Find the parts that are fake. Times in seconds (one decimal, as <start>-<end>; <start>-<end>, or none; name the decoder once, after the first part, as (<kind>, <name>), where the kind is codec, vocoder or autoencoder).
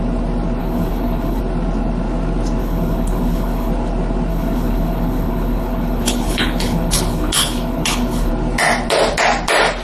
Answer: 0.6-1.4 (codec, HILCodec); 2.6-3.7; 4.3-8.3